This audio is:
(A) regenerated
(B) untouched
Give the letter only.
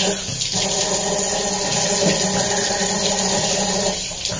B